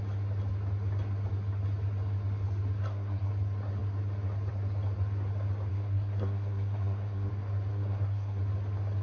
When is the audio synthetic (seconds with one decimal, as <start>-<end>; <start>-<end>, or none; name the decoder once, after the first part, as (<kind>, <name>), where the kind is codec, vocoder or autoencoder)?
2.8-3.3 (codec, SNAC); 5.7-7.3; 7.7-8.4